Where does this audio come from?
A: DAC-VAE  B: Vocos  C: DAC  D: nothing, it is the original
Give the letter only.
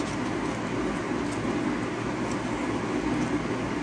D